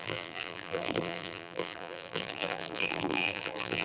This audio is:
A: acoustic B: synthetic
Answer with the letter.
B